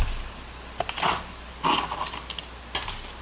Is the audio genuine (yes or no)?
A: yes